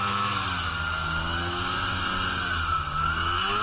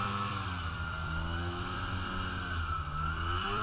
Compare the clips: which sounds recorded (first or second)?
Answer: first